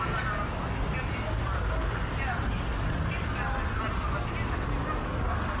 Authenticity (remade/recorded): recorded